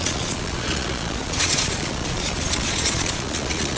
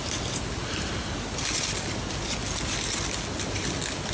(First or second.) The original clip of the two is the second